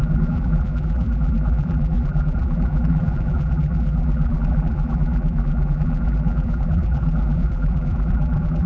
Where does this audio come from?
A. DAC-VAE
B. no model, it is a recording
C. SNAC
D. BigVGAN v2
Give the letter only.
D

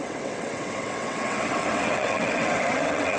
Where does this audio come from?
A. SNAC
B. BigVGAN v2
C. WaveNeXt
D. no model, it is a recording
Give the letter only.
C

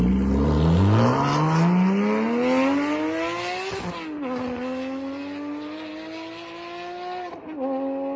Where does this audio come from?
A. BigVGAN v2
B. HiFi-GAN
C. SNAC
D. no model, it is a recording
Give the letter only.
D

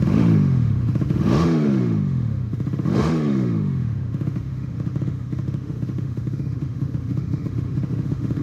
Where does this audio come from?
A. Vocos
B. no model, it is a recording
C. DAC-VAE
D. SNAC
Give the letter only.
C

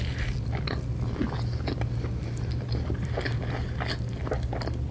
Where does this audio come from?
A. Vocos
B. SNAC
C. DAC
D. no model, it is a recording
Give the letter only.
D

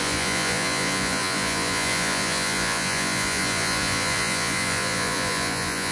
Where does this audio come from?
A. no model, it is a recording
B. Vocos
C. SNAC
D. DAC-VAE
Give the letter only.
B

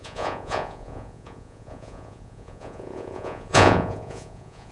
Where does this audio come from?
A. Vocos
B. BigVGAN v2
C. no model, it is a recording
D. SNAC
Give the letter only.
A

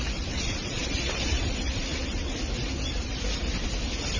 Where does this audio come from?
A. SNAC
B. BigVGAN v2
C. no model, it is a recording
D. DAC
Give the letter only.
C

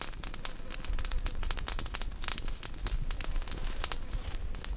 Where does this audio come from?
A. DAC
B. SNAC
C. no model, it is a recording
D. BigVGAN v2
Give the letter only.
C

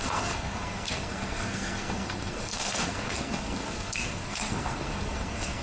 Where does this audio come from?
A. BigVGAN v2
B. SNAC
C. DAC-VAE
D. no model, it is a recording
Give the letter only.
B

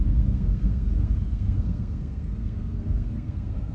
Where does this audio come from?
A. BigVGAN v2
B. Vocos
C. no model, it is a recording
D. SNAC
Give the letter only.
D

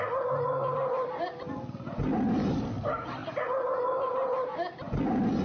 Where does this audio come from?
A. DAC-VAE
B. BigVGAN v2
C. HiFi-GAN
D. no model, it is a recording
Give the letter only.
B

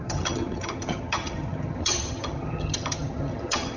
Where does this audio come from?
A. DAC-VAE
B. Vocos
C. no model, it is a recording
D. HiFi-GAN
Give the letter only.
D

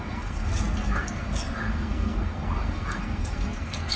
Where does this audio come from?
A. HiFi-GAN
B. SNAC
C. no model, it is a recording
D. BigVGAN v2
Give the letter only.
B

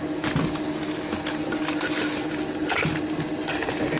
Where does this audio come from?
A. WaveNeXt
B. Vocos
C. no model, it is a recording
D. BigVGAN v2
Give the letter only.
C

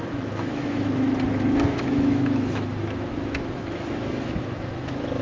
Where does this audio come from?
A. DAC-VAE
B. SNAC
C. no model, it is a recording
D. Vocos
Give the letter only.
A